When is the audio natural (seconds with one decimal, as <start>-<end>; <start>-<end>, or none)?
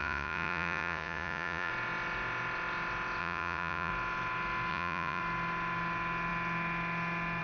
1.7-3.2; 3.9-4.7; 5.2-7.4